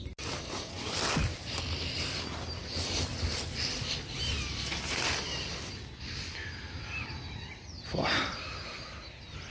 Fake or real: real